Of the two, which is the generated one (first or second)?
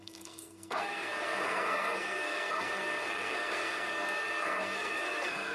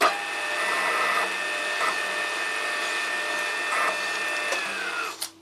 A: first